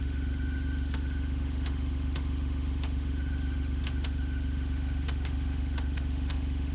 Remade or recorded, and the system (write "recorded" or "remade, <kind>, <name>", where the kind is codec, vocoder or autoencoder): remade, autoencoder, DAC-VAE